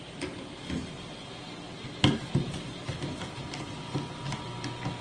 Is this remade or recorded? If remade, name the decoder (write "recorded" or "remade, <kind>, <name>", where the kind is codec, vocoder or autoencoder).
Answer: recorded